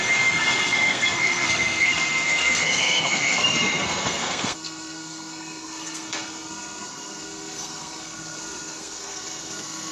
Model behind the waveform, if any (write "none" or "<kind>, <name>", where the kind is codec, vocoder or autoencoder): codec, SNAC